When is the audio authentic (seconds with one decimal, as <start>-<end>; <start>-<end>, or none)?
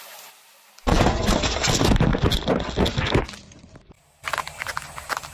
0.0-5.3